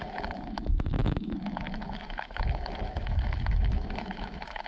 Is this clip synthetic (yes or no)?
yes